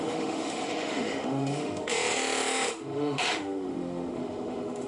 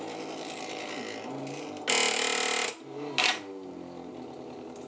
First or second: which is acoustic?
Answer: second